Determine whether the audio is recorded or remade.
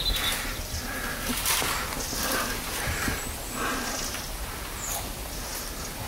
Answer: recorded